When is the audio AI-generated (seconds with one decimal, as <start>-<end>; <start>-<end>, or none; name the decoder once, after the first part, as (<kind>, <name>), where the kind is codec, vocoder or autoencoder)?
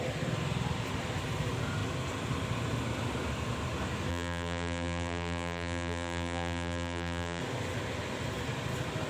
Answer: 4.1-7.4 (vocoder, BigVGAN v2)